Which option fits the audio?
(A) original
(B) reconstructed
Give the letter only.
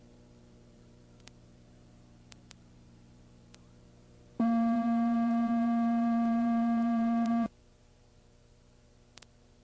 B